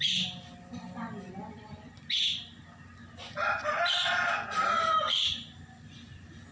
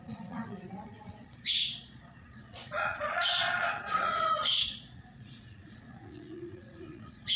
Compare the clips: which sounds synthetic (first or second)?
second